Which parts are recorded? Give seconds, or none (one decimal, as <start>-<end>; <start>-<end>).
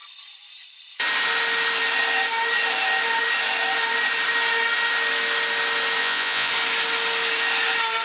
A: 0.0-6.0; 6.5-8.0